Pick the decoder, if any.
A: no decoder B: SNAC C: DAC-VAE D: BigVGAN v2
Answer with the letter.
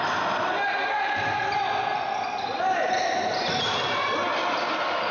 A